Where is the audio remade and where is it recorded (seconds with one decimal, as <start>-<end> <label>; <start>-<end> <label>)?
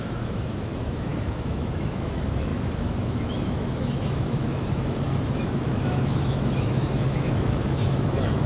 0.0-8.5 remade